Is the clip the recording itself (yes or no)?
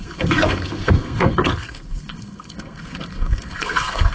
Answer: no